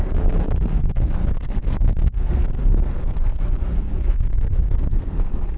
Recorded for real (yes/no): no